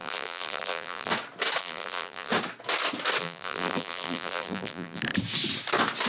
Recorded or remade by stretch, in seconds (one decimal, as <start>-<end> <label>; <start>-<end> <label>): 0.0-1.1 remade; 1.1-1.6 recorded; 1.6-2.3 remade; 2.3-3.2 recorded; 3.2-5.0 remade; 5.0-6.1 recorded